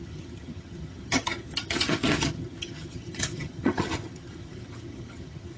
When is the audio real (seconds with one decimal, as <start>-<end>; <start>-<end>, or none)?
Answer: none